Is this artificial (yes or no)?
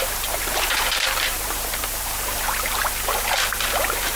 yes